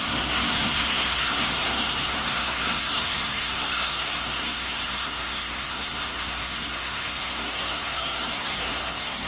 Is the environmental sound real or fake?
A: fake